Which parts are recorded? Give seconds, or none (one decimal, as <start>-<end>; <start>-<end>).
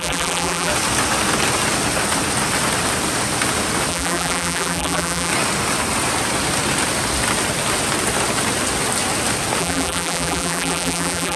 0.7-3.9; 5.3-9.6